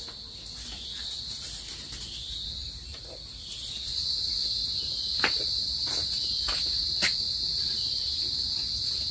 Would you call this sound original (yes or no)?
yes